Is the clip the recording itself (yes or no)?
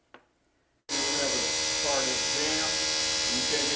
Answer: yes